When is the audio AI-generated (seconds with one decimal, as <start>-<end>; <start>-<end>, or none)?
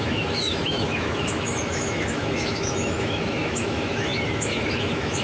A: 0.0-5.2